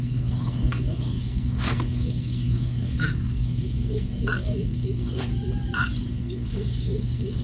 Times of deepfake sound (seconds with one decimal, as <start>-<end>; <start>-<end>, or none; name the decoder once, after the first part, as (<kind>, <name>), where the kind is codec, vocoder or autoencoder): 0.0-5.3 (codec, SNAC); 6.1-7.4

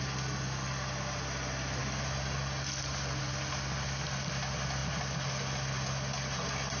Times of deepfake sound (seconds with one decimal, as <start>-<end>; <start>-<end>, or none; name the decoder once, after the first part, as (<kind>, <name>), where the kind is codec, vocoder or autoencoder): none

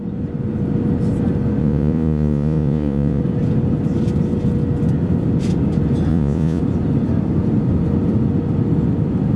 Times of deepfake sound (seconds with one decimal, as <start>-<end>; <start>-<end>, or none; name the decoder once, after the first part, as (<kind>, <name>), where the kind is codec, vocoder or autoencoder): 1.6-3.2 (vocoder, Vocos); 6.1-6.6

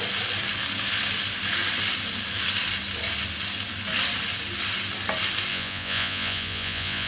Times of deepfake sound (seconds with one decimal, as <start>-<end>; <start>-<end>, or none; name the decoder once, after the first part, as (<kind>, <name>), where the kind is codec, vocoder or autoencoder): 5.5-7.1 (vocoder, Vocos)

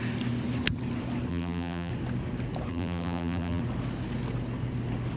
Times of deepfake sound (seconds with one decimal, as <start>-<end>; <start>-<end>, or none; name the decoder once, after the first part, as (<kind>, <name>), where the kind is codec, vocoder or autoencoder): 1.3-1.9 (vocoder, BigVGAN v2); 2.7-3.6

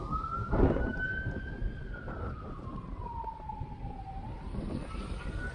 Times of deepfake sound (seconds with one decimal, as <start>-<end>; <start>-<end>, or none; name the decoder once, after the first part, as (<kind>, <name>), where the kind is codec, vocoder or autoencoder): none